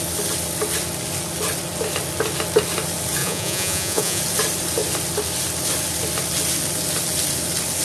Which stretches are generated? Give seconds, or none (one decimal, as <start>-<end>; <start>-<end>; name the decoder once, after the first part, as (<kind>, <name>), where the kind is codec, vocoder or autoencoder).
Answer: 3.2-4.2 (vocoder, Vocos)